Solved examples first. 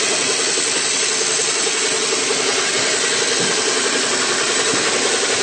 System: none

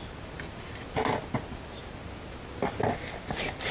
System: none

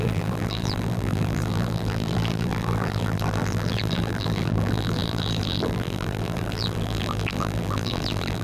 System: vocoder, BigVGAN v2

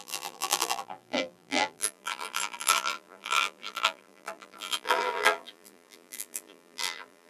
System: vocoder, BigVGAN v2